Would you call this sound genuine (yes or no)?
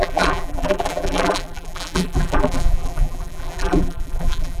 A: no